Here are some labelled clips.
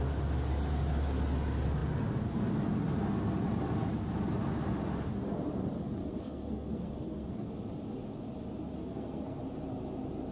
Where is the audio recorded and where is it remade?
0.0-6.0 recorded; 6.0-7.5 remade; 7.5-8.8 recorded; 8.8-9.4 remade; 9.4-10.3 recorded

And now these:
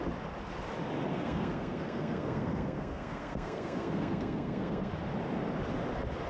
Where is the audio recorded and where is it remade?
0.0-1.1 recorded; 1.1-4.9 remade; 4.9-6.3 recorded